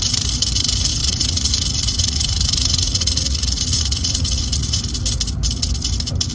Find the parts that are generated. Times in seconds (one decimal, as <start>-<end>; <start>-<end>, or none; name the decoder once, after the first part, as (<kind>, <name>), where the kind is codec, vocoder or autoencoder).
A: 1.0-4.8 (vocoder, Vocos)